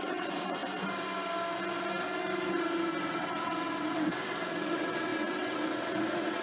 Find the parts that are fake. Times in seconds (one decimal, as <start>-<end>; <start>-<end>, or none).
0.0-0.6; 3.1-6.4